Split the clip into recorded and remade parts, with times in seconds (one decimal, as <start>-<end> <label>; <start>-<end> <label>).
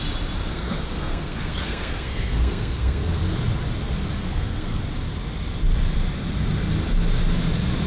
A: 0.0-0.5 recorded; 0.5-3.2 remade; 3.2-4.2 recorded; 4.2-4.8 remade; 4.8-7.9 recorded